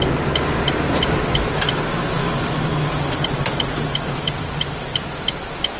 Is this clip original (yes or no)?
yes